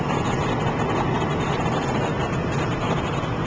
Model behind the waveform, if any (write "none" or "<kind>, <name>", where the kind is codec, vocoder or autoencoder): none